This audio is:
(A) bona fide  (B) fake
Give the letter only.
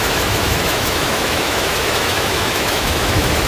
B